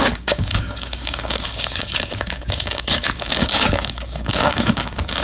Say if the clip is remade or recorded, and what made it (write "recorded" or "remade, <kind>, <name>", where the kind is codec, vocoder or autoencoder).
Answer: remade, codec, DAC